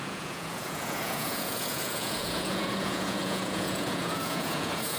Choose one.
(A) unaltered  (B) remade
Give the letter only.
B